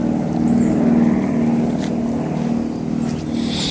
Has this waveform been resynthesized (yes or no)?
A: no